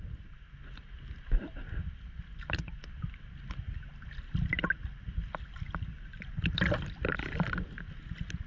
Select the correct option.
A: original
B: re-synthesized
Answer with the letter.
A